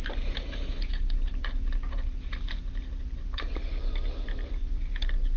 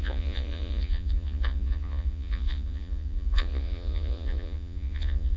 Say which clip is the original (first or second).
first